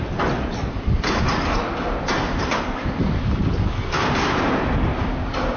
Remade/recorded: recorded